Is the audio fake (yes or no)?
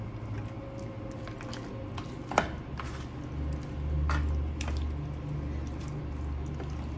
no